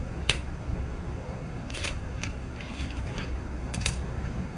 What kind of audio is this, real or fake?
fake